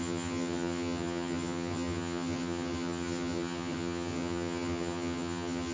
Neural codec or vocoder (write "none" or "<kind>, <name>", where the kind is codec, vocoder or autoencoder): vocoder, HiFi-GAN